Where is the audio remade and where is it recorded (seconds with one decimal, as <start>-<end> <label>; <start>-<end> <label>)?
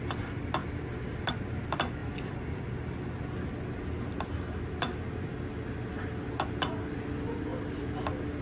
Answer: 0.0-8.4 recorded